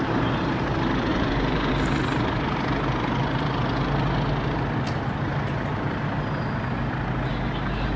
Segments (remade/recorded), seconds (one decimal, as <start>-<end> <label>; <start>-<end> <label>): 0.0-1.1 recorded; 1.1-1.7 remade; 1.7-8.0 recorded

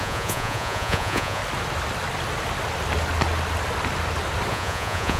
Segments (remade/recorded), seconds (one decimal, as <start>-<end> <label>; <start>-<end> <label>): 0.0-1.4 remade; 1.4-4.5 recorded; 4.5-5.2 remade

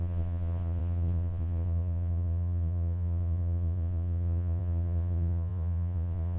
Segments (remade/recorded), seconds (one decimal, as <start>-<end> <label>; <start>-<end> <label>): 0.0-6.4 remade

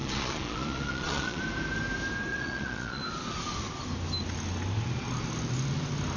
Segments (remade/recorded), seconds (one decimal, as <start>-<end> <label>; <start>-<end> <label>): 0.0-1.4 remade; 1.4-2.3 recorded; 2.3-3.0 remade; 3.0-6.2 recorded